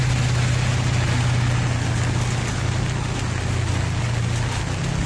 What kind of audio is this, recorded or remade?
recorded